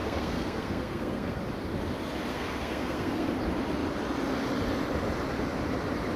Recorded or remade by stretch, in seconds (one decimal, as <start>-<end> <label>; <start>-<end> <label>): 0.0-1.4 remade; 1.4-2.3 recorded; 2.3-3.3 remade; 3.3-6.2 recorded